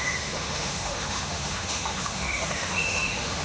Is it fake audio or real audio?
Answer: fake